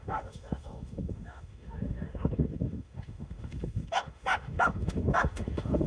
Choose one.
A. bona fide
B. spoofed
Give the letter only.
B